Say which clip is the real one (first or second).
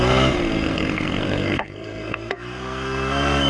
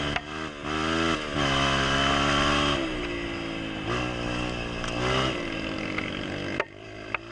second